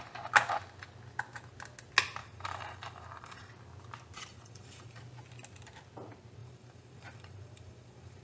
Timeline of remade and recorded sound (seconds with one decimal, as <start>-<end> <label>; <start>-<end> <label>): 0.0-2.2 recorded; 2.2-3.5 remade; 3.5-4.3 recorded; 4.3-5.0 remade; 5.0-6.4 recorded; 6.4-8.2 remade